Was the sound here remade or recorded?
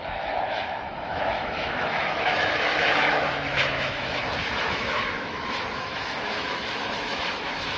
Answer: remade